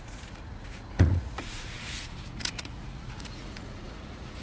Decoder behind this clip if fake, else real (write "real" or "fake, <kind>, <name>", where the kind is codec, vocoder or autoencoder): fake, vocoder, Vocos